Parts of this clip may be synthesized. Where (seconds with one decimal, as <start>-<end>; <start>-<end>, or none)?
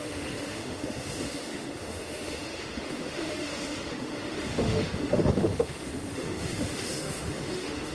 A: 0.0-7.9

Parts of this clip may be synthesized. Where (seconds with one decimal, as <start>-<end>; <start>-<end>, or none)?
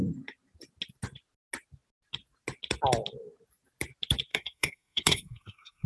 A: 4.3-5.9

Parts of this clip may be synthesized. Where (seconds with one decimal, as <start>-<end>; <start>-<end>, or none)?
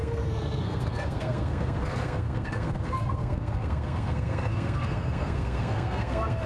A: 0.0-6.5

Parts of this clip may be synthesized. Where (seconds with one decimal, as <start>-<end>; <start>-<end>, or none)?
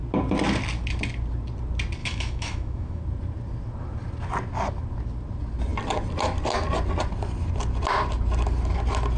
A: 2.0-3.0